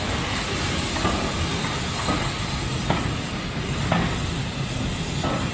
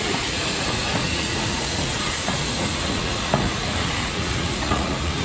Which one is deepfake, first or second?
second